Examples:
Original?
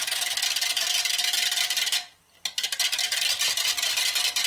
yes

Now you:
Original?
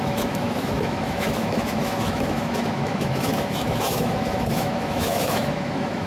no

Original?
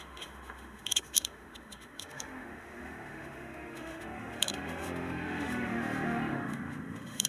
no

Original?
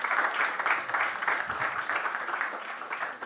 yes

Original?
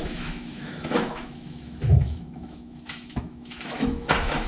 no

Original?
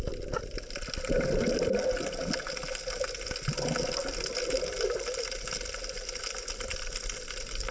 yes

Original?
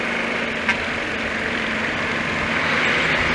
yes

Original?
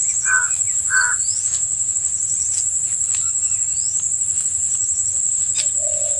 yes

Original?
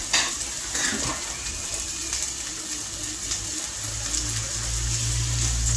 yes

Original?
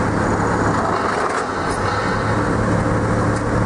yes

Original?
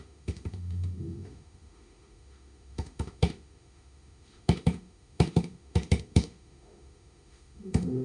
no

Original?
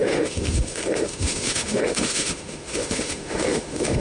no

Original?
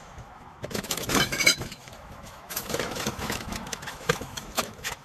no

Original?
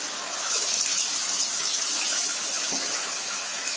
no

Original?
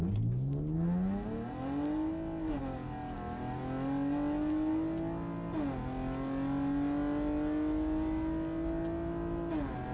yes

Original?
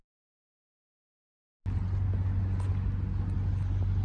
yes